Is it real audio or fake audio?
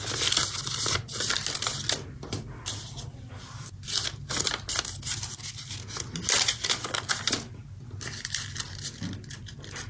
real